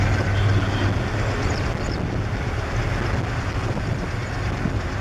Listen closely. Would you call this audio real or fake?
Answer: real